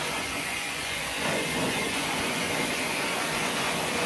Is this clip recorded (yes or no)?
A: no